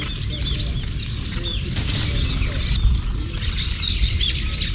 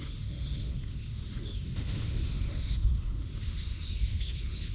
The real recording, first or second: first